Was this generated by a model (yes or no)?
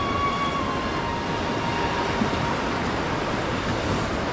no